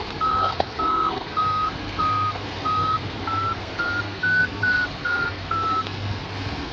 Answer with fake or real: fake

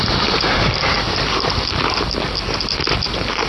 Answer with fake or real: real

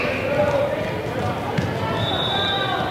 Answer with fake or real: real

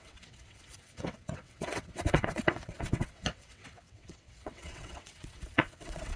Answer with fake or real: fake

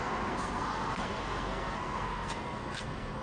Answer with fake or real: fake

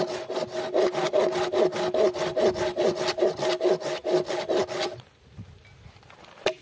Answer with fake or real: real